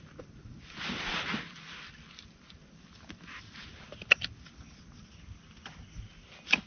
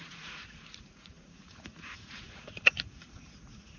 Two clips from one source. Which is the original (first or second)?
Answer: first